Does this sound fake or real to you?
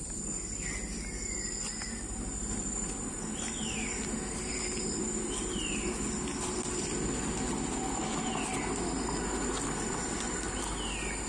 real